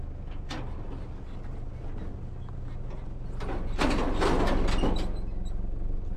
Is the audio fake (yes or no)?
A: no